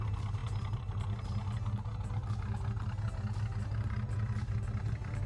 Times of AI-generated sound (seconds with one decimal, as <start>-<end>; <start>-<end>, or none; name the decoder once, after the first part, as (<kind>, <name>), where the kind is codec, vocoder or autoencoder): none